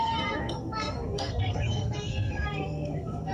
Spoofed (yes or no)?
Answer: yes